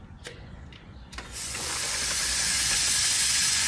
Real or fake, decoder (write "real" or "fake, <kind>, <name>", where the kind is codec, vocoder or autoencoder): fake, vocoder, Vocos